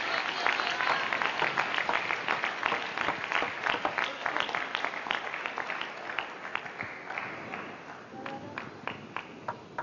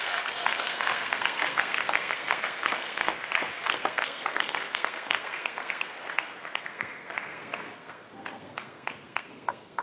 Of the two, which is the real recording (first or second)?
first